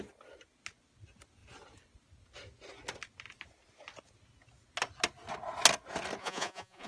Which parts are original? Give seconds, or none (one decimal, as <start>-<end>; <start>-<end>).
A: 0.0-6.2